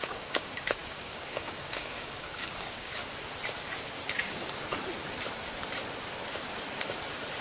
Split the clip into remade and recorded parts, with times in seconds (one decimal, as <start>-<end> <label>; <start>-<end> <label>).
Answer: 0.0-2.9 remade; 2.9-7.4 recorded